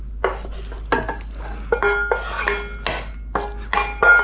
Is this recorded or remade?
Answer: recorded